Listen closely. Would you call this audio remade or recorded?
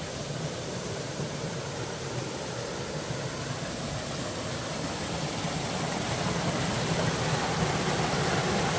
recorded